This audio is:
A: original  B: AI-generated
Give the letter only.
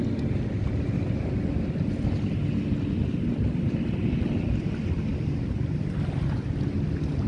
A